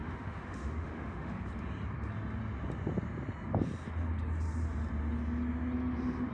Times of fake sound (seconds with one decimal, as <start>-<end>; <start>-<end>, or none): 0.0-1.5